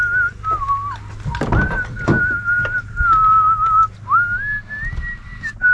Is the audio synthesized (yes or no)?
no